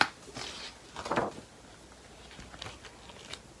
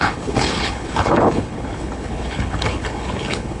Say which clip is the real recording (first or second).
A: first